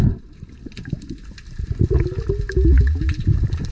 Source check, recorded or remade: recorded